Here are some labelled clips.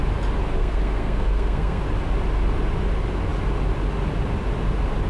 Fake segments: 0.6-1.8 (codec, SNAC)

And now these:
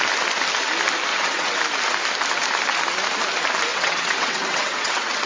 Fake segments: 1.1-1.6 (vocoder, WaveNeXt); 3.7-5.3

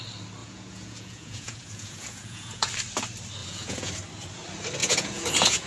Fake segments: 0.4-2.7 (vocoder, Vocos); 3.4-3.9; 4.8-5.7

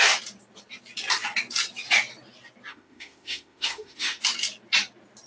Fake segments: 2.7-4.2 (autoencoder, DAC-VAE)

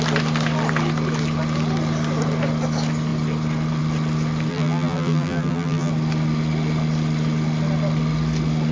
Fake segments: 4.5-5.9 (vocoder, BigVGAN v2)

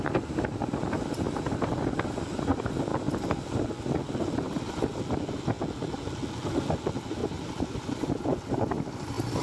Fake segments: 7.2-8.2 (vocoder, BigVGAN v2)

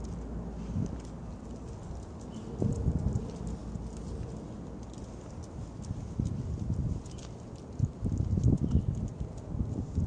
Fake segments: none

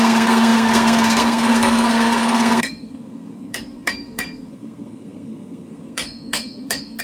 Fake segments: 0.0-7.0 (codec, SNAC)